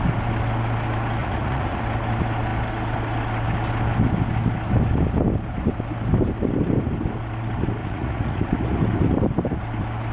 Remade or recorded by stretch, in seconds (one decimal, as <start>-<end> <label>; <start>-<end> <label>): 0.0-1.2 recorded; 1.2-1.8 remade; 1.8-7.8 recorded; 7.8-8.8 remade; 8.8-10.1 recorded